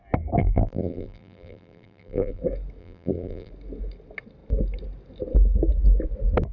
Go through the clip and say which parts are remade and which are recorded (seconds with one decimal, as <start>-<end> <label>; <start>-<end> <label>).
0.0-0.4 recorded; 0.4-2.4 remade; 2.4-2.8 recorded; 2.8-3.5 remade; 3.5-6.5 recorded